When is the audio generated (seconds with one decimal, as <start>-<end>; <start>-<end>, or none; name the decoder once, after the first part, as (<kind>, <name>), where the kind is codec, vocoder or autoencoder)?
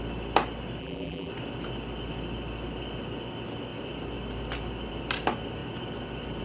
0.8-1.3 (vocoder, BigVGAN v2)